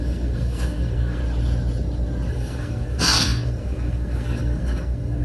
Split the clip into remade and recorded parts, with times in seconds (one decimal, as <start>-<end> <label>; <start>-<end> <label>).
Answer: 0.0-1.2 remade; 1.2-2.3 recorded; 2.3-5.2 remade